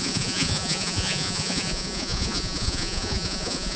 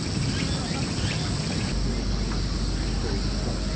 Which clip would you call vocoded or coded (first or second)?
first